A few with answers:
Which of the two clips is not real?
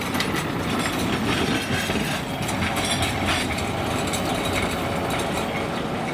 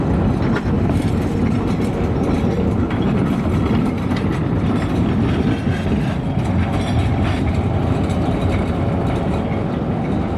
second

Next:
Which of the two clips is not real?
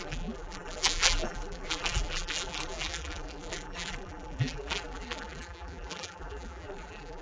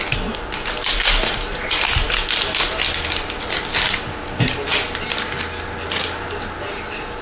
first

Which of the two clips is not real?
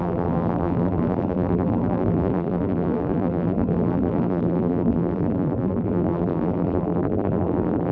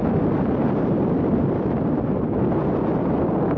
first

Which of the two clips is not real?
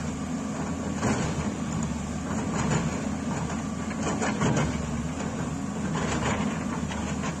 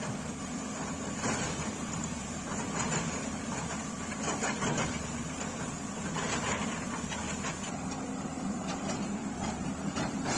second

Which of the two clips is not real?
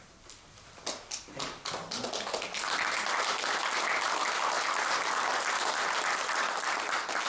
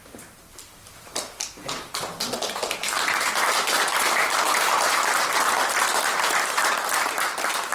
second